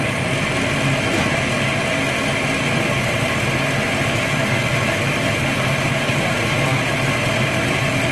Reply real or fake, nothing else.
real